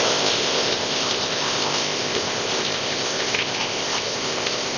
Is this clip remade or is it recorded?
remade